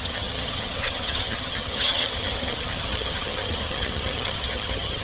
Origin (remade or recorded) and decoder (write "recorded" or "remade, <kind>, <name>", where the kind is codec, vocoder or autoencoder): remade, vocoder, HiFi-GAN